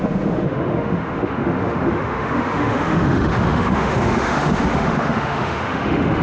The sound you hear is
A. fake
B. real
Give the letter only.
A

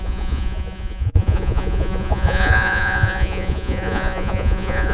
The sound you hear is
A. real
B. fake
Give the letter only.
B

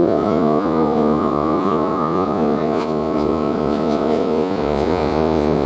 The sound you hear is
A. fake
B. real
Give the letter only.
A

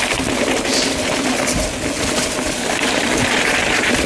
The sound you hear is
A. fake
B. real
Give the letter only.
B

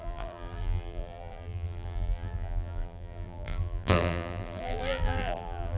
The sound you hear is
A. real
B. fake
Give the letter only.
B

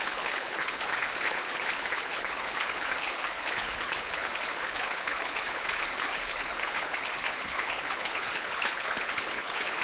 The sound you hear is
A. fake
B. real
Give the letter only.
A